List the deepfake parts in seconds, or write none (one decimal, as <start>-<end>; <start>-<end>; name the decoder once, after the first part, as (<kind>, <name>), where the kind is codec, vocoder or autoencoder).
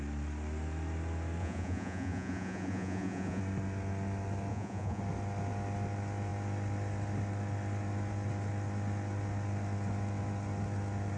1.4-3.4 (vocoder, Vocos); 4.5-5.0